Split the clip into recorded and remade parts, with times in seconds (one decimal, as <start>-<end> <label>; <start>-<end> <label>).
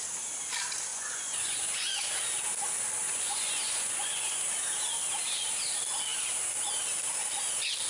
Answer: 0.0-0.9 recorded; 0.9-2.1 remade; 2.1-3.0 recorded; 3.0-4.4 remade; 4.4-7.9 recorded